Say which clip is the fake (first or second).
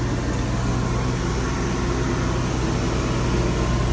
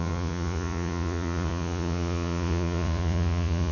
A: second